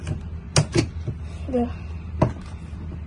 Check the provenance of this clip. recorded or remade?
recorded